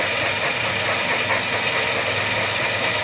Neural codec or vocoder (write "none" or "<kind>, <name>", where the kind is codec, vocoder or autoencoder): none